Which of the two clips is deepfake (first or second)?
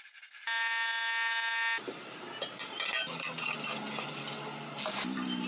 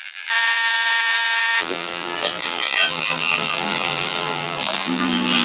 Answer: second